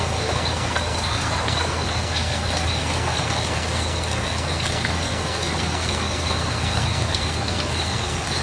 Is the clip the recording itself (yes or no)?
no